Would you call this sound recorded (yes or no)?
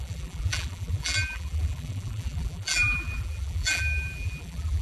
no